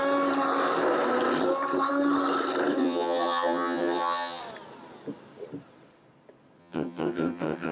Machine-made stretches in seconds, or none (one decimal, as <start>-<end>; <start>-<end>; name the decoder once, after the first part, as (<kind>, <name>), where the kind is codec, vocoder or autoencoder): 2.8-4.4 (vocoder, HiFi-GAN); 6.6-7.7